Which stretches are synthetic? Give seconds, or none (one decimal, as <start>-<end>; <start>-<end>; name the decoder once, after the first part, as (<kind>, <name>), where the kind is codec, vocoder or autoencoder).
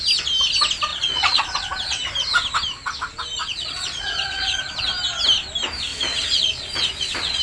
0.9-1.7 (vocoder, Vocos); 3.4-4.7; 5.9-7.4